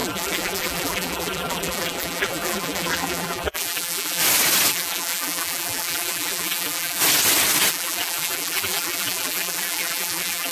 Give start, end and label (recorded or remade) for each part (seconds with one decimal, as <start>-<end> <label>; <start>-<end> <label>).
0.0-4.2 remade; 4.2-4.7 recorded; 4.7-7.0 remade; 7.0-7.7 recorded; 7.7-10.5 remade